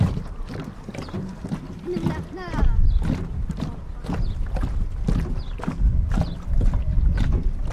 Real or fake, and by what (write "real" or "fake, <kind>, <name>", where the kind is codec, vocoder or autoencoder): real